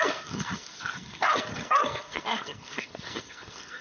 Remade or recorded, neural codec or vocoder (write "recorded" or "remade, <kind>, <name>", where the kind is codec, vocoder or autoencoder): remade, codec, SNAC